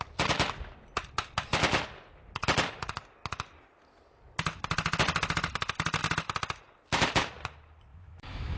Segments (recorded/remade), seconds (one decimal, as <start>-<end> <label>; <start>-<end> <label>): 0.0-7.9 recorded; 7.9-8.6 remade